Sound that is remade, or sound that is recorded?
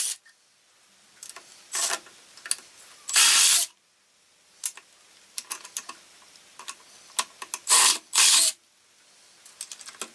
recorded